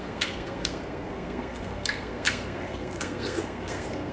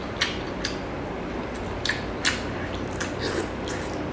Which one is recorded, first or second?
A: second